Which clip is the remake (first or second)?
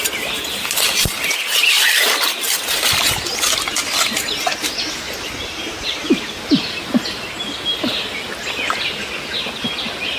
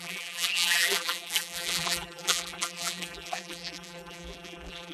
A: second